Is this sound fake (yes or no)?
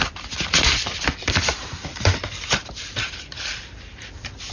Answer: yes